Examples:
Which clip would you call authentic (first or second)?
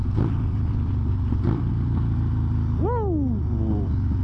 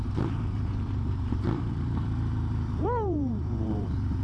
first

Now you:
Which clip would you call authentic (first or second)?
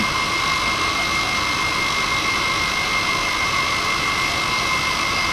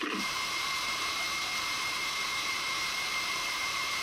first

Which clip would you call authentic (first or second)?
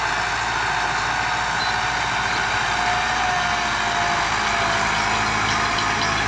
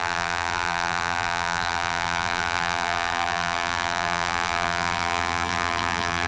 first